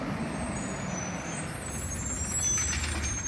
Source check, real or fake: real